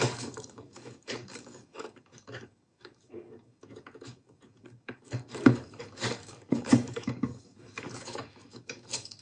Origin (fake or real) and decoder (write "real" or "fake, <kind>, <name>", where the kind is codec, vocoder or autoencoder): fake, codec, DAC